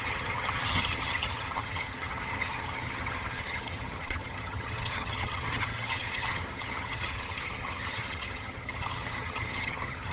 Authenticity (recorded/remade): remade